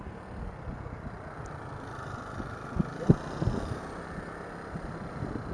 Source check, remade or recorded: recorded